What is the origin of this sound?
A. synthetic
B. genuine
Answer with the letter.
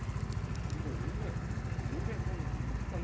B